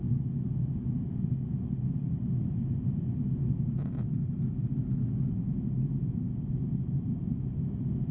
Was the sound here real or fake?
real